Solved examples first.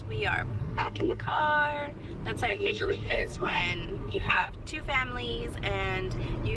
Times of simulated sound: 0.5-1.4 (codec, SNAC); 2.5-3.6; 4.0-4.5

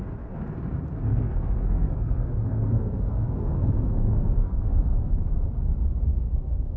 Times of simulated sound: 1.1-5.2 (codec, SNAC); 6.1-6.8

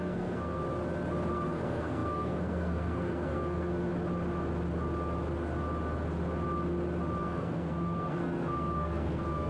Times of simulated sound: 0.0-0.6 (codec, SNAC); 1.3-3.9; 7.2-9.5

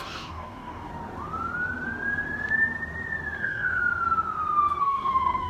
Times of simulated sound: 0.0-0.9 (codec, DAC); 3.4-3.8; 4.8-5.5

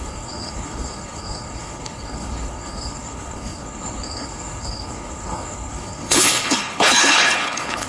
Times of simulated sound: 0.0-7.9 (codec, HILCodec)